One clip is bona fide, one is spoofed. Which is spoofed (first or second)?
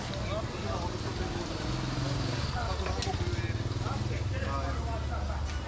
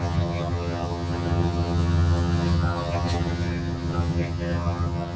second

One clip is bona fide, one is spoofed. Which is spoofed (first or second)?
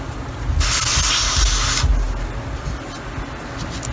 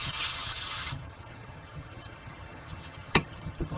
second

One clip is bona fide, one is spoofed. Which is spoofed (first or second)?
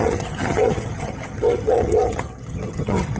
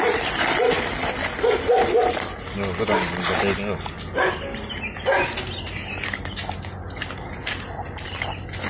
first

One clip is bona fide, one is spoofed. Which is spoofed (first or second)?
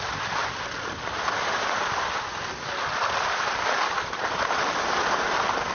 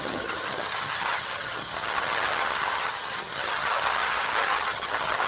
second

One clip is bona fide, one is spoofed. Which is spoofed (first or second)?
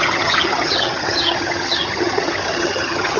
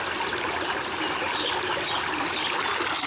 first